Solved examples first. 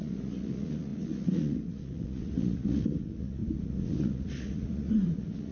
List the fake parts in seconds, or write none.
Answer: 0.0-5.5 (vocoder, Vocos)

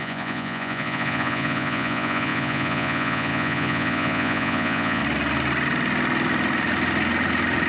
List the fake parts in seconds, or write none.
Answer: 0.0-5.0 (vocoder, Vocos)

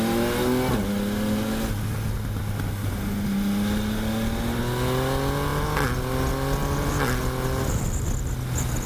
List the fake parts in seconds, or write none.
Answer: none

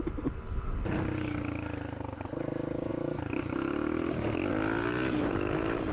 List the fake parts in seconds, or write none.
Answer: none